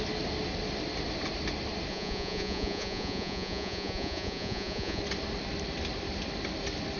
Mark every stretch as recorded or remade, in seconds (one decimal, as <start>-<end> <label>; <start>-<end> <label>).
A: 0.0-1.9 recorded; 1.9-5.0 remade; 5.0-7.0 recorded